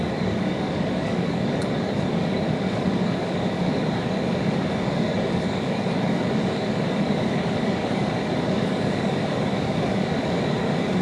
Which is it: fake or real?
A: fake